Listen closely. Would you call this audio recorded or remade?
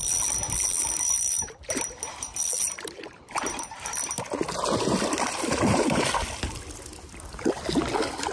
recorded